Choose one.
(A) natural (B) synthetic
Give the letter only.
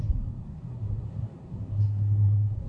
B